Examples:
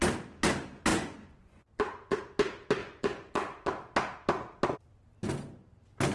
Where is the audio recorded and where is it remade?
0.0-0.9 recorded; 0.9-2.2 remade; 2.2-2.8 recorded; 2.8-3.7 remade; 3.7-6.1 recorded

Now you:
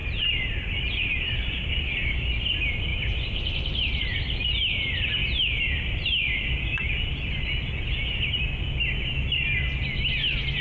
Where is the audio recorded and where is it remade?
0.0-1.7 remade; 1.7-2.9 recorded; 2.9-4.0 remade; 4.0-10.6 recorded

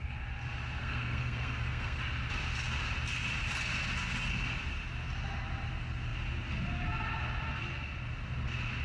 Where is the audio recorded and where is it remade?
0.0-0.8 recorded; 0.8-2.0 remade; 2.0-8.8 recorded

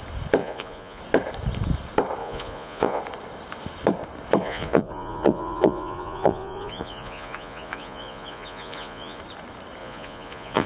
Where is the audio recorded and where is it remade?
0.0-0.4 recorded; 0.4-1.0 remade; 1.0-2.2 recorded; 2.2-3.0 remade; 3.0-4.4 recorded; 4.4-9.2 remade; 9.2-9.8 recorded; 9.8-10.7 remade